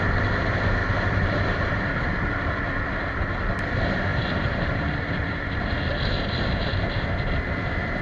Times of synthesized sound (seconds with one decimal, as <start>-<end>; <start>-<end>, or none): 0.8-3.2; 4.1-6.7